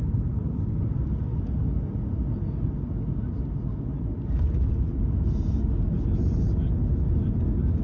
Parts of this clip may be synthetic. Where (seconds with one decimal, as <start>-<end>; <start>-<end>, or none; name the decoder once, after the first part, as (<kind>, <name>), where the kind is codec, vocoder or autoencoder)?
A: none